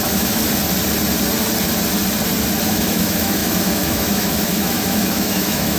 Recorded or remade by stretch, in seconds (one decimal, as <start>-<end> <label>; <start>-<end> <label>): 0.0-0.4 remade; 0.4-2.7 recorded; 2.7-5.8 remade